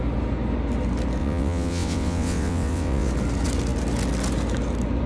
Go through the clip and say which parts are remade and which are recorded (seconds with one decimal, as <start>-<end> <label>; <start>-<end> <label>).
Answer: 0.0-1.2 recorded; 1.2-3.1 remade; 3.1-5.1 recorded